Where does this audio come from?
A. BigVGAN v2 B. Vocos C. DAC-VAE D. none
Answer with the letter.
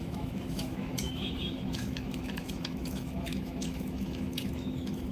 C